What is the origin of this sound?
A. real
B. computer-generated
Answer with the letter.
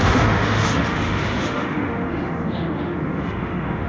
B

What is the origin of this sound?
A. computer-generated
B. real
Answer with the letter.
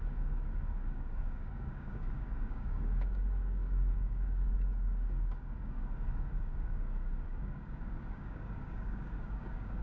A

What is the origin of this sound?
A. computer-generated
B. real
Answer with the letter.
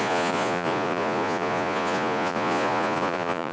A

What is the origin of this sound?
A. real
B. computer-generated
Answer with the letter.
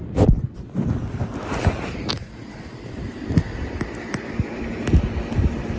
A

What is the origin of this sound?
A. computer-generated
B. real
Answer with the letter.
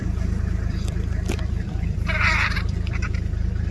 A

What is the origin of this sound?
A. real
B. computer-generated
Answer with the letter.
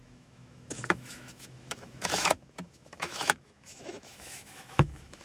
B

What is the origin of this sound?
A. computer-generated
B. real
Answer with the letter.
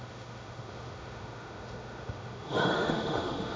A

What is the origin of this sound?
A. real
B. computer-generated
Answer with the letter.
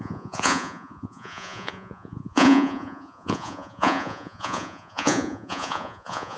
B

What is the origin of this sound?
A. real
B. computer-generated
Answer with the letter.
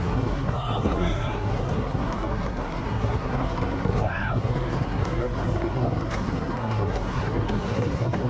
B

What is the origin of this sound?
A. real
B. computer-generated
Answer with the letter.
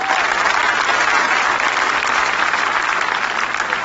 A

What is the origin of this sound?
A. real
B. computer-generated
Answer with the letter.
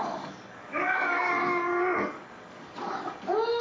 B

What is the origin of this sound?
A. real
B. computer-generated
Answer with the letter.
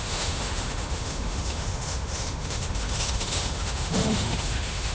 B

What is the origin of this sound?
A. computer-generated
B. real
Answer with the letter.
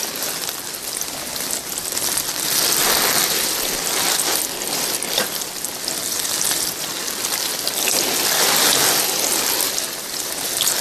A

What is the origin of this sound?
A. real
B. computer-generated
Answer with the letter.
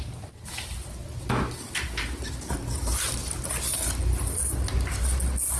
A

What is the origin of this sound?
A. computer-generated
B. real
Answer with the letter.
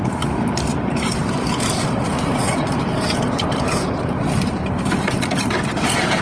A